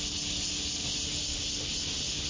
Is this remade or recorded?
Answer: recorded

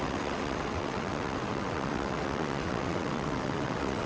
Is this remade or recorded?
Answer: remade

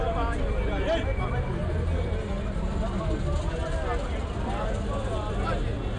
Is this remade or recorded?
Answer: recorded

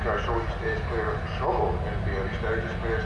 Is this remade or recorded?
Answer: recorded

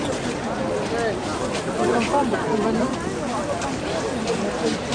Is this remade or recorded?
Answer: recorded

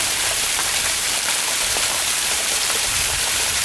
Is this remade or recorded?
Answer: remade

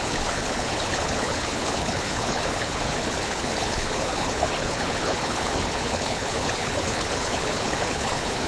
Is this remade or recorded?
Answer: remade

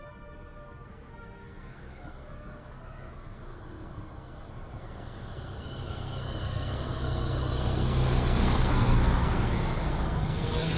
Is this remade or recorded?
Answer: remade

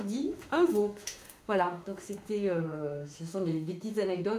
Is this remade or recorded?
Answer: remade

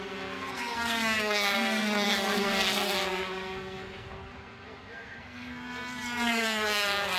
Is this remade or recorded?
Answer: remade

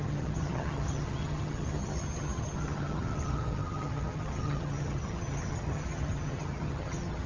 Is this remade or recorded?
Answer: remade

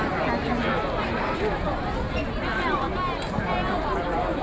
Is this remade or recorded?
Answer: recorded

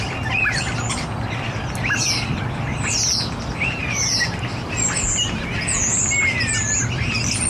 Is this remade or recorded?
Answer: recorded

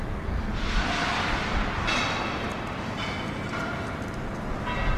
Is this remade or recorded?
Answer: recorded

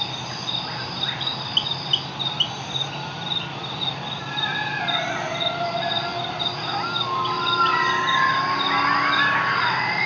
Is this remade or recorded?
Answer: recorded